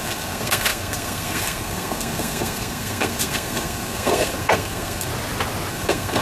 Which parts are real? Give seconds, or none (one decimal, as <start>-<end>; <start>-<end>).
5.1-5.7